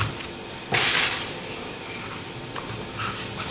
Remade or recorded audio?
recorded